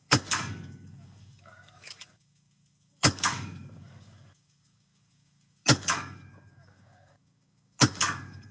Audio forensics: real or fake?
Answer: fake